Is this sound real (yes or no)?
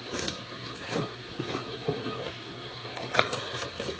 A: no